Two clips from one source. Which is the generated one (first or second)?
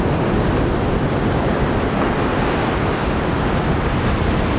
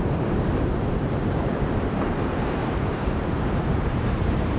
second